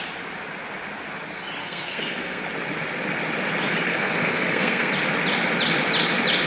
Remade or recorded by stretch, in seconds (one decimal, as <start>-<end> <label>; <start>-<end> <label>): 0.0-1.6 recorded; 1.6-2.4 remade; 2.4-3.9 recorded; 3.9-4.9 remade; 4.9-6.5 recorded